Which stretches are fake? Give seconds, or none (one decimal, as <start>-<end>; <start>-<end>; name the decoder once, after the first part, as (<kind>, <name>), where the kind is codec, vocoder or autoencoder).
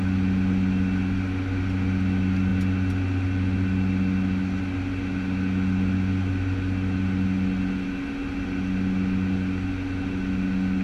none